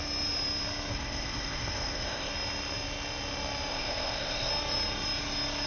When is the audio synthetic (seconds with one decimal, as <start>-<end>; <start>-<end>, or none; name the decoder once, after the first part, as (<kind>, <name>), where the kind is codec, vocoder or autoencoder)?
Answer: 0.9-2.3 (codec, ZipCodec); 3.7-4.5